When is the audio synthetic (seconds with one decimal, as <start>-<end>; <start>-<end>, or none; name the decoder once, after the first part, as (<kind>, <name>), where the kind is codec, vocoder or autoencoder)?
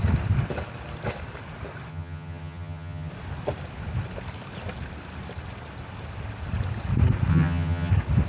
1.9-3.1 (vocoder, HiFi-GAN); 7.3-7.9